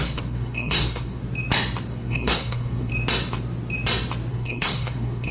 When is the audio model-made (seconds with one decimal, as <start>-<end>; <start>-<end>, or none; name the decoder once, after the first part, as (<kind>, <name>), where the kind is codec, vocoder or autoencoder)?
0.0-1.2 (codec, SNAC); 1.9-2.9; 4.3-5.3